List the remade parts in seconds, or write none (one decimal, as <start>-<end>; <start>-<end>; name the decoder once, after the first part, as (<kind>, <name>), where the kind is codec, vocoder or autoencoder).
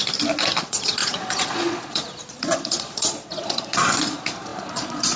0.6-5.2 (vocoder, Vocos)